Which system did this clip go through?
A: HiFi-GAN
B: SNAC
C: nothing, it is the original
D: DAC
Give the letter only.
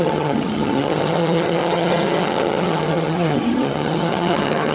A